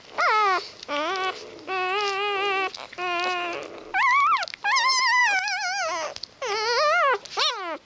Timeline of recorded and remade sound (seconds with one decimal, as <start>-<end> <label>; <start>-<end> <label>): 0.0-7.9 recorded